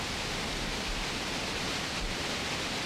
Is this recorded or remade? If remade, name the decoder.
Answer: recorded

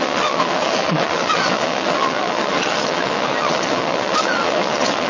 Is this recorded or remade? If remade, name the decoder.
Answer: remade, vocoder, WaveNeXt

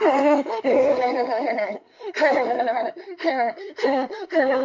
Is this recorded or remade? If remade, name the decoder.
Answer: remade, codec, SNAC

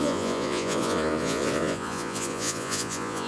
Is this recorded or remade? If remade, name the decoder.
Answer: remade, vocoder, Vocos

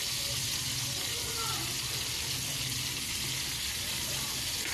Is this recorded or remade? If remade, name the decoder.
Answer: recorded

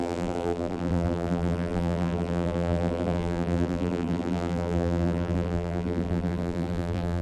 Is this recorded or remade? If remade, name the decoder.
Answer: remade, vocoder, BigVGAN v2